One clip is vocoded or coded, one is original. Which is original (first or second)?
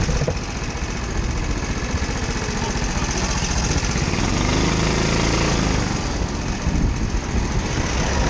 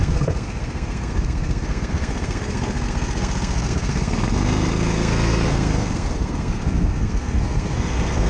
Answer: first